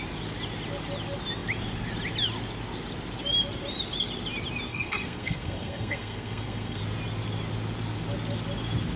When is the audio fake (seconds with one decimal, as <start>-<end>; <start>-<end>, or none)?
4.7-6.8